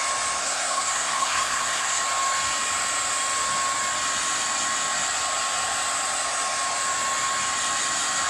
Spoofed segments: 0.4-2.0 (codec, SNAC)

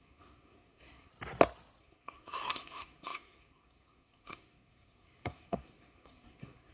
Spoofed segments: 0.0-1.1 (codec, SNAC); 1.8-6.7

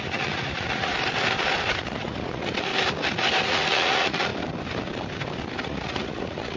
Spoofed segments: 0.0-0.9 (vocoder, Vocos); 1.8-2.7; 3.5-4.3; 5.6-6.6

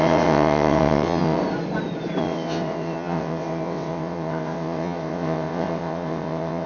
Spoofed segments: 0.0-1.4 (vocoder, WaveNeXt); 2.2-6.7

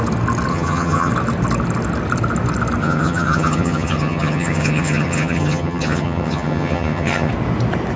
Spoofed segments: 0.5-1.1 (vocoder, HiFi-GAN); 2.8-7.3

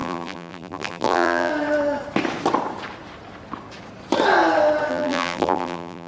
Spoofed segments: 0.0-1.5 (vocoder, BigVGAN v2); 4.9-6.1

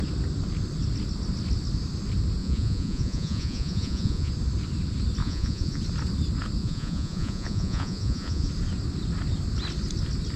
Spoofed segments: 2.4-4.3 (vocoder, Vocos); 5.2-5.8; 6.6-8.5